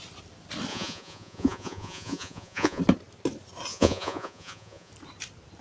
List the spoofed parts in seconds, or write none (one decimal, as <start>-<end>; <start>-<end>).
0.7-2.8; 3.7-4.9